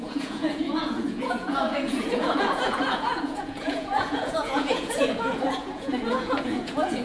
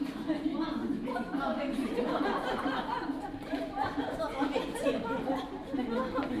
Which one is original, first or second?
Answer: second